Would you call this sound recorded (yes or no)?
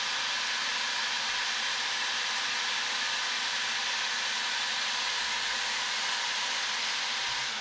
yes